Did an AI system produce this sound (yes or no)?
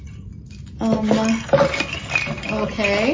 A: no